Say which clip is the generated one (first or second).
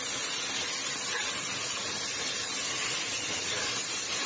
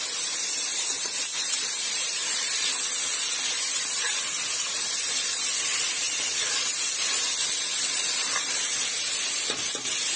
second